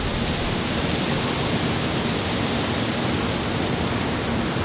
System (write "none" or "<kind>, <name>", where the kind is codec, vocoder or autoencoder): none